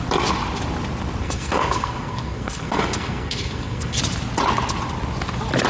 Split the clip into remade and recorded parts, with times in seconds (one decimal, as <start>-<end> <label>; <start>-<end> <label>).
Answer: 0.0-1.2 recorded; 1.2-4.0 remade; 4.0-5.7 recorded